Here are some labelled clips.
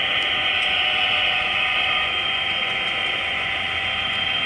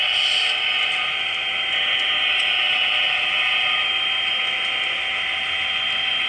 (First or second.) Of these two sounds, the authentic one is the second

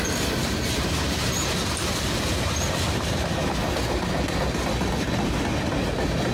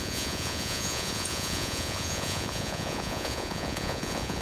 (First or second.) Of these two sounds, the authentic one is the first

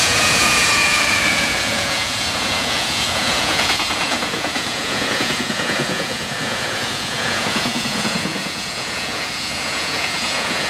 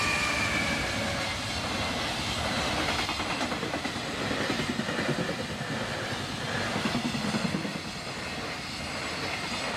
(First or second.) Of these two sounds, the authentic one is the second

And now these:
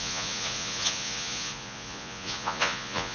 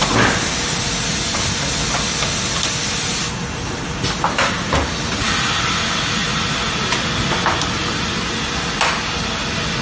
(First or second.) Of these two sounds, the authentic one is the second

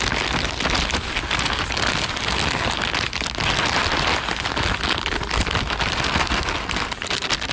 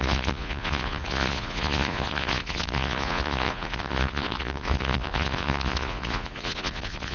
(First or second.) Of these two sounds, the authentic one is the first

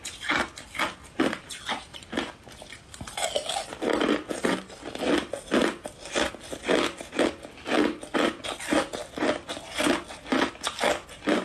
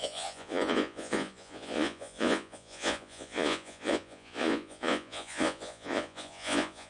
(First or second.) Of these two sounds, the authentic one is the first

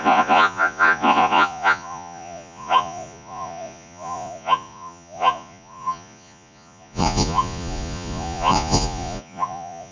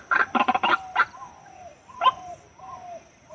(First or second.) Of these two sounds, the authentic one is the second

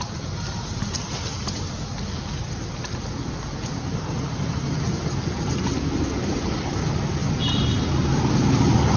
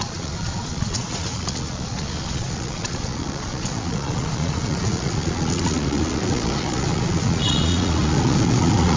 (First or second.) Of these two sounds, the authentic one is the first